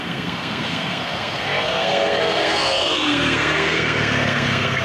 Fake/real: fake